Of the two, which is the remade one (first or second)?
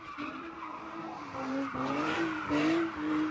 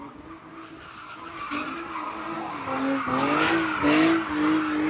first